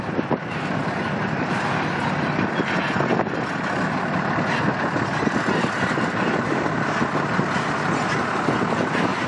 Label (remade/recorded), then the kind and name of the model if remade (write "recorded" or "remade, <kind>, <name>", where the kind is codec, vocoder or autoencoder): recorded